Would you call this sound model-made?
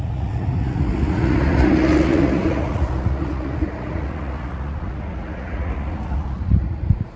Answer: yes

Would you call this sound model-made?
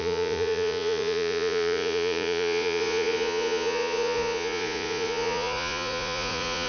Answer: yes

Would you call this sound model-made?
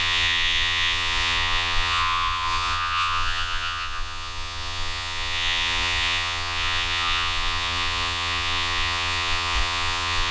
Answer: yes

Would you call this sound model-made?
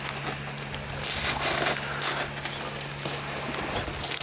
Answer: no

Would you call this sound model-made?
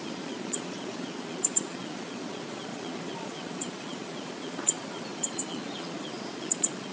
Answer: yes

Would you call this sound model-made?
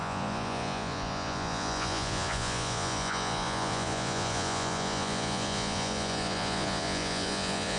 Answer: yes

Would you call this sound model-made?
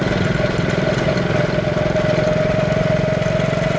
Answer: no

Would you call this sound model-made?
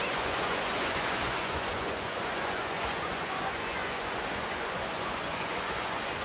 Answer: yes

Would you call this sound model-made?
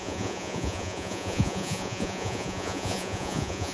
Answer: yes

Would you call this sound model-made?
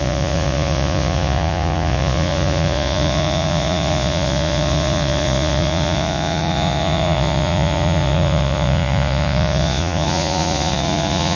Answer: yes